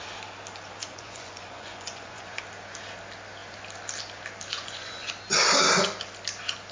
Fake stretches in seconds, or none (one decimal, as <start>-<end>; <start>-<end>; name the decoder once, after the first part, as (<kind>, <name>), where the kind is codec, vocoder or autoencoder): 0.8-2.4 (vocoder, Vocos); 4.5-5.1

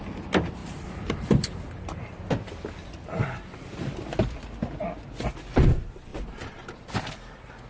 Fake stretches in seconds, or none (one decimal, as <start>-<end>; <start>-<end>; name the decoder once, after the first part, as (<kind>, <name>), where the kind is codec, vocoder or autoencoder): 0.6-2.0 (vocoder, BigVGAN v2)

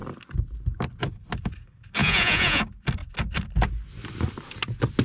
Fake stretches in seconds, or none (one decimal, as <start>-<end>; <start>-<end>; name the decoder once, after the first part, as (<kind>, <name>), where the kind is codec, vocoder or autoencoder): 2.0-2.6 (vocoder, Vocos)

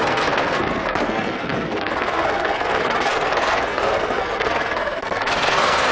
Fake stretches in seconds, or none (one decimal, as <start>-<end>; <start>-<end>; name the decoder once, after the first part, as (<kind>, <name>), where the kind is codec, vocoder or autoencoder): 0.0-5.9 (codec, SNAC)

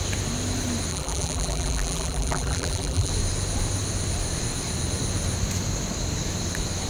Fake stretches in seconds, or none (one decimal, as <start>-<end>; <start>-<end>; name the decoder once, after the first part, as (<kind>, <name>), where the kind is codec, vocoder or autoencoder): 0.9-3.1 (vocoder, BigVGAN v2)

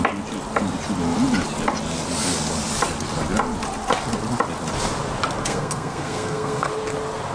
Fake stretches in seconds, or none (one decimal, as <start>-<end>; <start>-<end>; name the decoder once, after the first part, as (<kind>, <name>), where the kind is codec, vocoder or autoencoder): 5.4-6.7 (codec, SNAC)

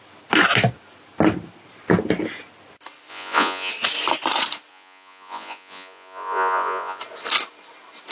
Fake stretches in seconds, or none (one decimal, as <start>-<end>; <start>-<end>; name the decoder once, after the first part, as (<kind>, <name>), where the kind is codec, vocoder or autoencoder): 3.1-3.7 (vocoder, Vocos); 4.7-7.0

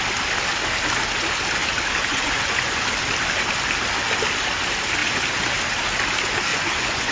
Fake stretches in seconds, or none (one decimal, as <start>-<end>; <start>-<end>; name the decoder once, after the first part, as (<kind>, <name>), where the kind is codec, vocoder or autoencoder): 2.1-2.8 (vocoder, Vocos); 6.5-7.1